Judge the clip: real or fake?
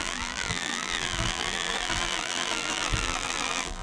fake